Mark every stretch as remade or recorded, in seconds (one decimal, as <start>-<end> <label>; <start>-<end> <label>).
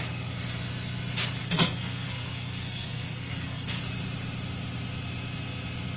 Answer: 0.0-1.4 recorded; 1.4-3.8 remade; 3.8-6.0 recorded